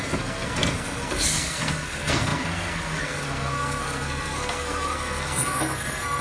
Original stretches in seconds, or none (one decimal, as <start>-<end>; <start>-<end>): none